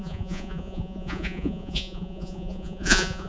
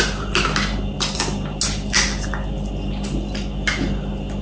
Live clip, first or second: second